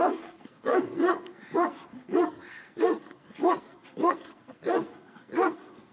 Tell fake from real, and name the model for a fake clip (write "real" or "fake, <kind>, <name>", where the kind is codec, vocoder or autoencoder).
fake, codec, SNAC